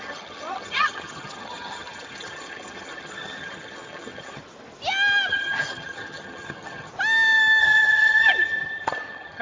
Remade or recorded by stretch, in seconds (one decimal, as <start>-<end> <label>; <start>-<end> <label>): 0.0-4.4 remade; 4.4-5.3 recorded; 5.3-6.9 remade; 6.9-7.6 recorded; 7.6-9.4 remade